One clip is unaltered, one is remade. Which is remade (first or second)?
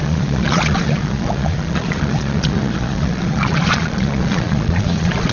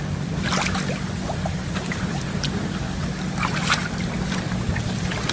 first